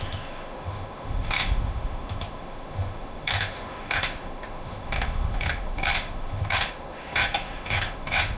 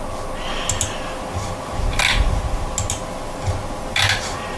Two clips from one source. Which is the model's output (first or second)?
first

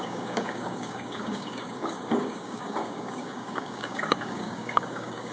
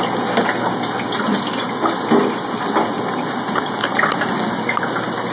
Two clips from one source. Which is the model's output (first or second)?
first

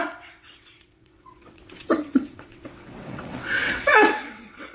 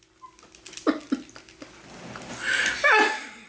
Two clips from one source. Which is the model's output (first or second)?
first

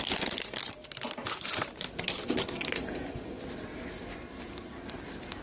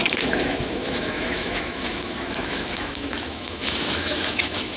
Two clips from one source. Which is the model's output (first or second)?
second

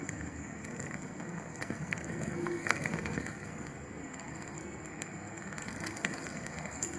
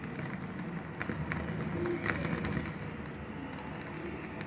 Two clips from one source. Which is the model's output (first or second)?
first